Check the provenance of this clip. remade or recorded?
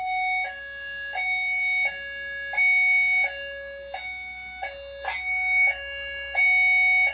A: recorded